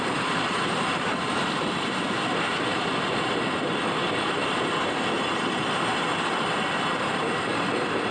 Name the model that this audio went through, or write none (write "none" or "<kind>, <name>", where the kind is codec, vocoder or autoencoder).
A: vocoder, BigVGAN v2